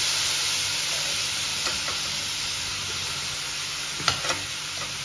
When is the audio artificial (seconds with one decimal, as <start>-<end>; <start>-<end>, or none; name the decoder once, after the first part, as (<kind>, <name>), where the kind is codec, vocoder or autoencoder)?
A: 0.0-1.5 (vocoder, BigVGAN v2); 4.5-5.0